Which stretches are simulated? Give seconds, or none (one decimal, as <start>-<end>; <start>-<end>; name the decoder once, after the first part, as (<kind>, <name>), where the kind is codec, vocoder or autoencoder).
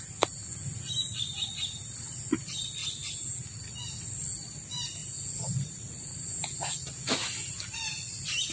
none